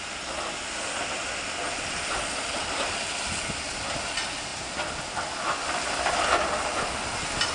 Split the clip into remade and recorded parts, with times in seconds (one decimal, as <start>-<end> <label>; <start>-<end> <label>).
0.0-4.5 recorded; 4.5-5.1 remade; 5.1-5.6 recorded; 5.6-6.3 remade; 6.3-7.5 recorded

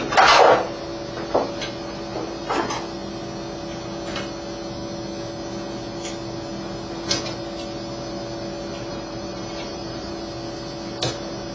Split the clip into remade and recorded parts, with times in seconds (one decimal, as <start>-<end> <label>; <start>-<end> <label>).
0.0-8.9 recorded; 8.9-10.1 remade; 10.1-11.5 recorded

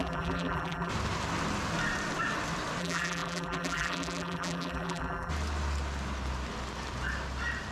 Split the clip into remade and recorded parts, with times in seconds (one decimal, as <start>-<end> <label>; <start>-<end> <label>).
0.0-0.9 remade; 0.9-2.8 recorded; 2.8-5.3 remade; 5.3-7.7 recorded